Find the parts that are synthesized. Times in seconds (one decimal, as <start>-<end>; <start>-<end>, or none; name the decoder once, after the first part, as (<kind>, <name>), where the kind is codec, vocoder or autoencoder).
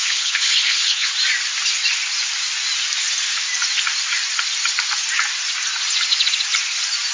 0.0-1.1 (codec, HILCodec)